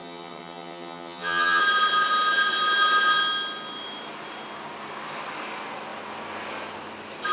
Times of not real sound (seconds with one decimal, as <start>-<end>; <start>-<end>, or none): 0.0-1.6